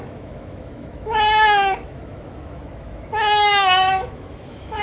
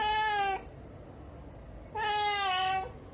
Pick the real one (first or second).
second